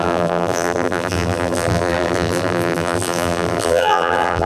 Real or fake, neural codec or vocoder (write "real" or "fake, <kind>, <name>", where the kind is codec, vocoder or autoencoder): fake, vocoder, BigVGAN v2